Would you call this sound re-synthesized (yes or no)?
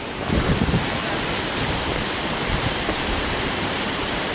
yes